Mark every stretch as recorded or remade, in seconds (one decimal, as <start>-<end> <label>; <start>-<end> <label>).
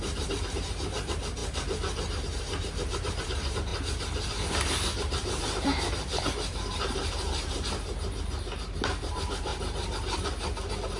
0.0-9.5 remade; 9.5-11.0 recorded